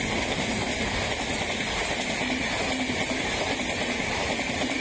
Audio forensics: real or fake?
real